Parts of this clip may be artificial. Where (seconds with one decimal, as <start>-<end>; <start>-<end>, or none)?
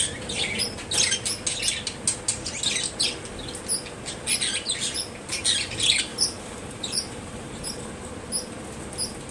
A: 6.1-7.8